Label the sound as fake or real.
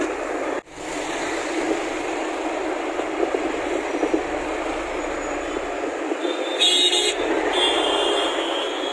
real